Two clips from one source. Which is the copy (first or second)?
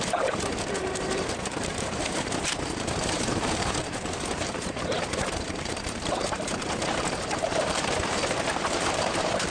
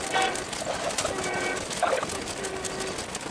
first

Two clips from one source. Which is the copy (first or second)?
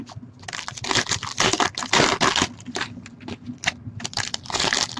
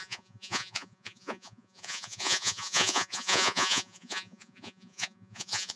second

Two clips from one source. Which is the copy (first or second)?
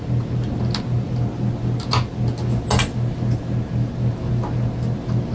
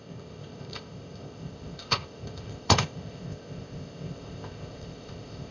second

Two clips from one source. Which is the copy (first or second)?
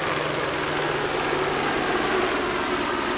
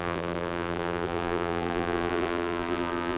second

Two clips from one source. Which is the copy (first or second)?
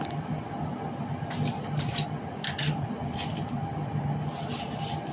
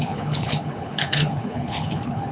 second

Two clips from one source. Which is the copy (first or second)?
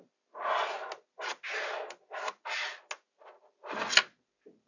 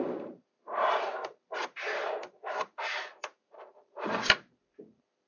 second